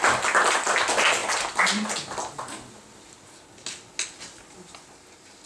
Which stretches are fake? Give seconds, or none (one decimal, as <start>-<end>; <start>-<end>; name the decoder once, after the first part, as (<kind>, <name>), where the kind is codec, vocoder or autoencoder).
none